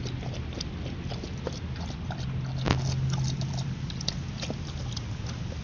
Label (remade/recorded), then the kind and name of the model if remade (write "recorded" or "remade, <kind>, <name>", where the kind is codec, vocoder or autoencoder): recorded